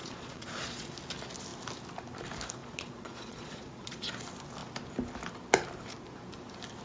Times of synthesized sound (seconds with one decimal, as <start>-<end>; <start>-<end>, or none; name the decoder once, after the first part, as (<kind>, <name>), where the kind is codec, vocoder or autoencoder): 0.0-0.9 (vocoder, Vocos); 2.6-4.1